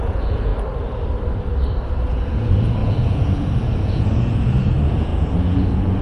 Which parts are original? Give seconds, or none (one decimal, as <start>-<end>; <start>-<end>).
0.5-2.1